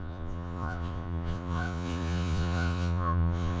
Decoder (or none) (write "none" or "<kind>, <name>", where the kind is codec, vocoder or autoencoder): vocoder, Vocos